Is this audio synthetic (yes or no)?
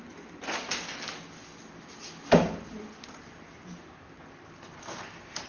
no